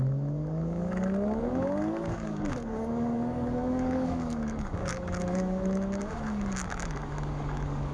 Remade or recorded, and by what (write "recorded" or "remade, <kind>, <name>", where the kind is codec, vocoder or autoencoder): remade, codec, DAC